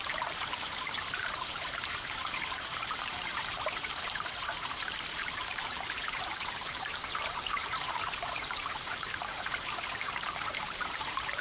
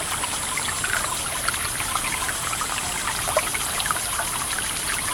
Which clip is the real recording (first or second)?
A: second